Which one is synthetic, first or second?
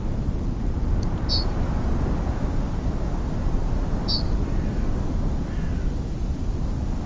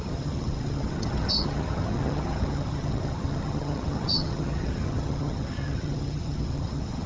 second